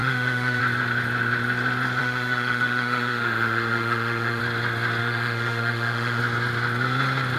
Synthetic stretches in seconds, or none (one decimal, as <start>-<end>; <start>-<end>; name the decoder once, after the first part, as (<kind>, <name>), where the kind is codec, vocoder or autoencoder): 0.0-0.6 (autoencoder, DAC-VAE); 2.0-4.4; 5.0-6.2